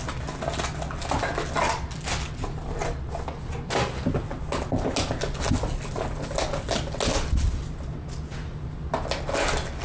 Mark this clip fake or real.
real